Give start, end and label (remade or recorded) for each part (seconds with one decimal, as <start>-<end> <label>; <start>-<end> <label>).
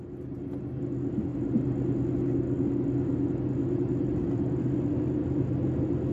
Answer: 0.0-6.1 recorded